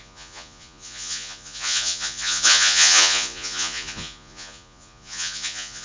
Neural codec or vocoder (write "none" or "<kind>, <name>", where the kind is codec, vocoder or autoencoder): vocoder, Vocos